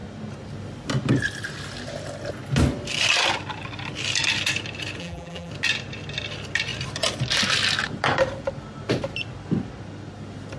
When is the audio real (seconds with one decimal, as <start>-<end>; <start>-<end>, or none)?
0.0-5.0; 5.5-10.6